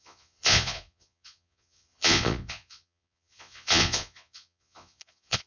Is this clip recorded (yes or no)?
no